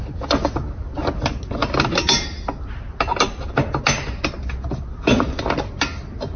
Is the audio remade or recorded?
recorded